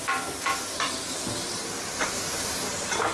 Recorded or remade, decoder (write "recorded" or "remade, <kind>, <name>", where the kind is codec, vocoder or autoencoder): remade, vocoder, BigVGAN v2